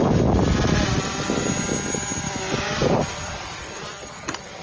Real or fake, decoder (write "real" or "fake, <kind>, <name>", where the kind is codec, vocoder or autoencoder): real